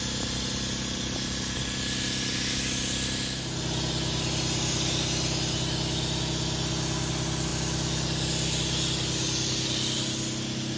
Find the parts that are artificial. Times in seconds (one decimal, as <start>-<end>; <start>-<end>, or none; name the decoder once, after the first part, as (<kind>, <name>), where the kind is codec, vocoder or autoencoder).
none